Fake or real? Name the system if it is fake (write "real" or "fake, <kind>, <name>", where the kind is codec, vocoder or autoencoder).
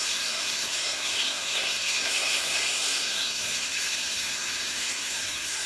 fake, codec, SNAC